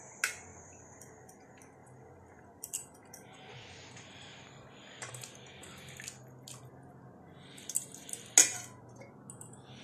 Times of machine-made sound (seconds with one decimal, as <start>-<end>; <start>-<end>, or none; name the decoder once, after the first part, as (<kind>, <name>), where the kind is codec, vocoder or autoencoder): 0.5-1.3 (vocoder, BigVGAN v2); 1.8-5.1